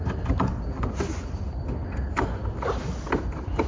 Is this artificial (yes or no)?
no